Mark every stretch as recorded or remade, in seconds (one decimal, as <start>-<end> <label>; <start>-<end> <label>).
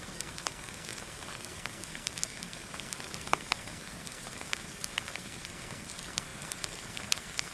0.0-7.5 remade